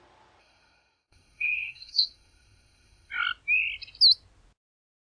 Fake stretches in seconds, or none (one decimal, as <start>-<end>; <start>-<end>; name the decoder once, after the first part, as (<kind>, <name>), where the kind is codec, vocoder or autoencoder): 0.4-3.1 (codec, SNAC)